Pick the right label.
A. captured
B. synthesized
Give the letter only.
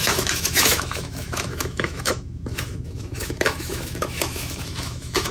B